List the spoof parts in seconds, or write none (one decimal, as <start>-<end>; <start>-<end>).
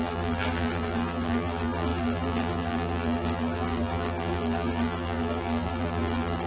0.0-6.5